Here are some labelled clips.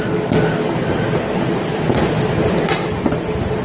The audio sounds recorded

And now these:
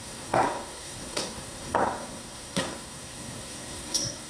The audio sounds remade